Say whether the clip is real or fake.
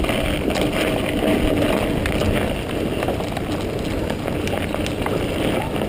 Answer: real